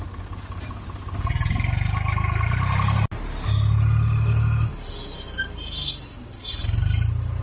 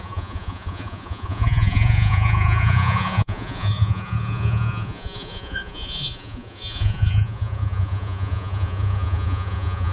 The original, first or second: first